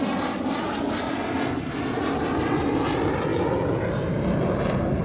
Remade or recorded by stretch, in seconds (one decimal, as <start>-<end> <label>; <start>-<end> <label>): 0.0-5.0 recorded